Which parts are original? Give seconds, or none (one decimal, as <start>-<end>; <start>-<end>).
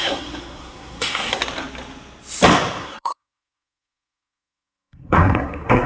1.4-2.8